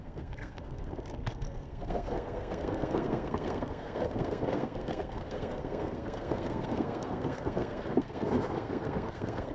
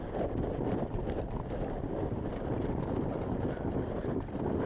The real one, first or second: second